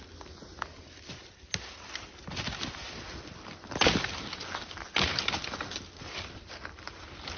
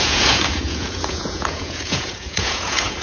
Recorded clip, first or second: first